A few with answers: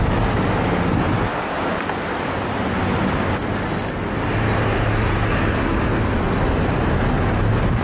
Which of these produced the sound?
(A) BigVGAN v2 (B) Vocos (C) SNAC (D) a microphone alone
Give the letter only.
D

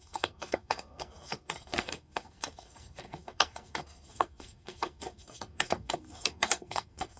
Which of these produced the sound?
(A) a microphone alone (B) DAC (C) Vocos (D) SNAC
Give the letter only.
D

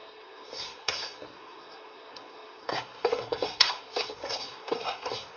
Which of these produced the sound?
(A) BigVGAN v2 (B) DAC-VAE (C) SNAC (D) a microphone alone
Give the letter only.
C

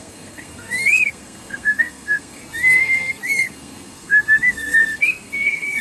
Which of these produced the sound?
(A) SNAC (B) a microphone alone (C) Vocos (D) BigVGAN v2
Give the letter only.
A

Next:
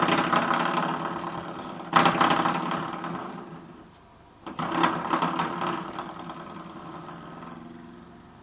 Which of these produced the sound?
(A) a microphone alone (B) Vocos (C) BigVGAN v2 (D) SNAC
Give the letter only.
A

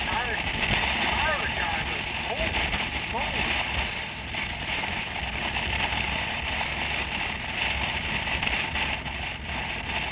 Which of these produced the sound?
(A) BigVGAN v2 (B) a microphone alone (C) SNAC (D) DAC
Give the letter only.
B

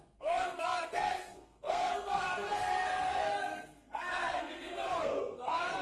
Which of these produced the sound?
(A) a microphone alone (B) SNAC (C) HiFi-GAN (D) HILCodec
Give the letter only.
B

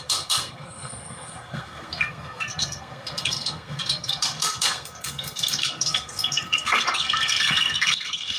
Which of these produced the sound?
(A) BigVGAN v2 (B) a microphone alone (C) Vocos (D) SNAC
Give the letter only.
D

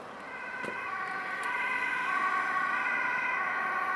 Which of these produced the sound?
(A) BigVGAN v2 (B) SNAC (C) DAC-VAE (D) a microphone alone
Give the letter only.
D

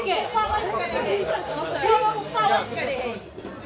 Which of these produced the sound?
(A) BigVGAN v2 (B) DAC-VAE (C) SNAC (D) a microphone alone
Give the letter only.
D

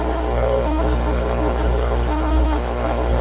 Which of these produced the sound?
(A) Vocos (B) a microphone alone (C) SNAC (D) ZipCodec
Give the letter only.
C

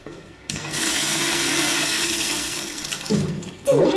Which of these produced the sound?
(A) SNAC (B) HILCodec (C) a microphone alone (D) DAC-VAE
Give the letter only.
A